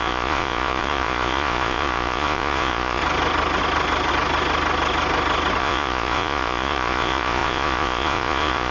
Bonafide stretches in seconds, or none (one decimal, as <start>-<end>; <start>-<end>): 3.0-5.6

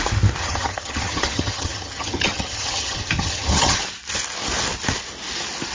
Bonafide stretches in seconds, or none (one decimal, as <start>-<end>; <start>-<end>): 0.0-0.4; 3.8-5.7